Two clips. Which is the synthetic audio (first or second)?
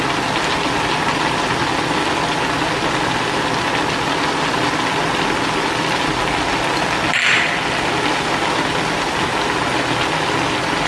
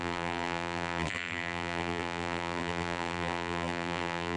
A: second